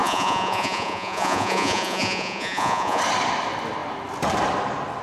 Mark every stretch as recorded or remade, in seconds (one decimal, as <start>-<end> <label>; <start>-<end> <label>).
0.0-3.0 remade; 3.0-5.0 recorded